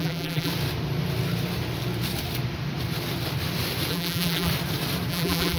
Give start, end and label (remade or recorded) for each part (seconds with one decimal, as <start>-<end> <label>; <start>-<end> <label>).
0.0-0.5 remade; 0.5-3.9 recorded; 3.9-4.5 remade; 4.5-5.1 recorded; 5.1-5.6 remade